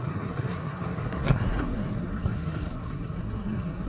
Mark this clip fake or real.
fake